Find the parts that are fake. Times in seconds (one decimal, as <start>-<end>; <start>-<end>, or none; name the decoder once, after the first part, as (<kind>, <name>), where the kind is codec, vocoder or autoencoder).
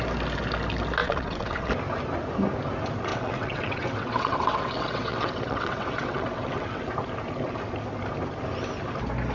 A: 1.0-1.7 (vocoder, WaveNeXt); 3.1-6.8